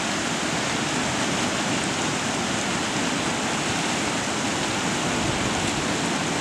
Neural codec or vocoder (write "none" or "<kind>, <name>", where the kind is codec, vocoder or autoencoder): none